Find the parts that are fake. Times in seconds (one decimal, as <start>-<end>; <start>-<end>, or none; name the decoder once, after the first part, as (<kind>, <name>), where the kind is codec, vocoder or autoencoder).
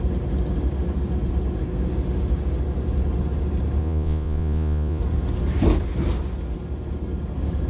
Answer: 3.8-5.0 (vocoder, Vocos)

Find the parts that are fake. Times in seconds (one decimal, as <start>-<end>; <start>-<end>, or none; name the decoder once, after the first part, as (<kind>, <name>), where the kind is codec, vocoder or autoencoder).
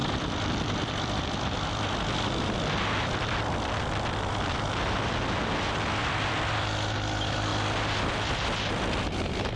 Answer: 0.0-4.8 (vocoder, BigVGAN v2); 6.0-6.5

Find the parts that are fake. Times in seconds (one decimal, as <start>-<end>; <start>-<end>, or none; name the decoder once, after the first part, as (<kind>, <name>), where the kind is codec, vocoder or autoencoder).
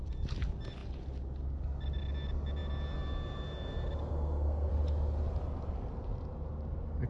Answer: 4.1-4.7 (codec, SNAC)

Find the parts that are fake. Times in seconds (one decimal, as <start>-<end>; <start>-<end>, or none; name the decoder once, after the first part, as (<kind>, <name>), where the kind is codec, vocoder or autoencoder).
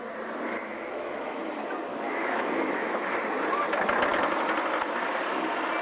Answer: 0.7-1.4 (autoencoder, DAC-VAE); 1.9-3.1